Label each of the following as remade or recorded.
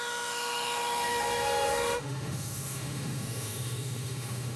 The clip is remade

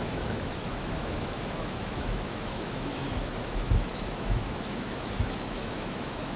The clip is remade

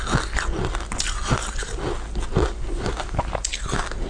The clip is recorded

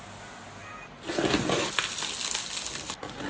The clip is recorded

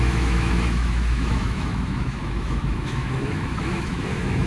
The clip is remade